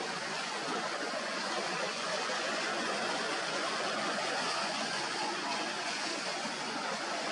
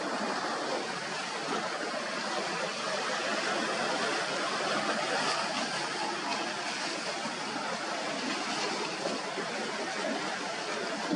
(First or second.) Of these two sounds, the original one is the second